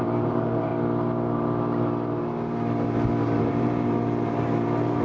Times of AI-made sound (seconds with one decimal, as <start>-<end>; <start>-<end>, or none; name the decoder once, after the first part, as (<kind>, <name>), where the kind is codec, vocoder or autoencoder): 0.0-0.7 (vocoder, BigVGAN v2); 3.4-5.0